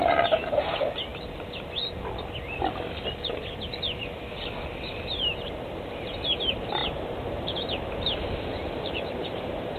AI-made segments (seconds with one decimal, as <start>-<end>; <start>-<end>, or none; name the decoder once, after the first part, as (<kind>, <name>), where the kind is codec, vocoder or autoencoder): 0.0-1.1 (vocoder, BigVGAN v2); 5.2-9.8